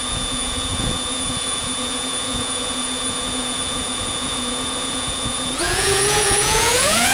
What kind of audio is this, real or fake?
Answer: fake